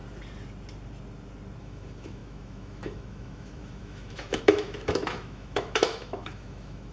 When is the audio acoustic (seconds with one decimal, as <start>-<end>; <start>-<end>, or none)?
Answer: 0.0-1.6